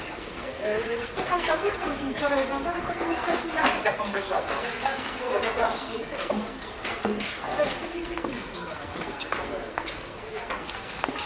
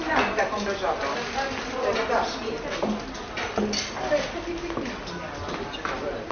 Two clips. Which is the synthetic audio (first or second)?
first